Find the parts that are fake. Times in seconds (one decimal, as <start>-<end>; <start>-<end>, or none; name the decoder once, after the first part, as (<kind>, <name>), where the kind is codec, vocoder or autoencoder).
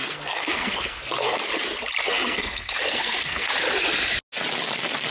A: 0.0-1.4 (codec, SNAC); 2.0-3.5